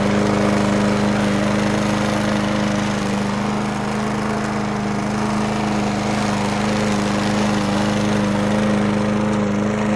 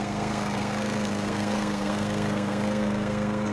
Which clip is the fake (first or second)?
second